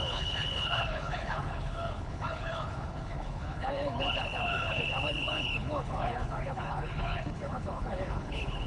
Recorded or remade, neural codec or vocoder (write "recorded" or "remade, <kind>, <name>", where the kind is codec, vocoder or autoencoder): remade, codec, HILCodec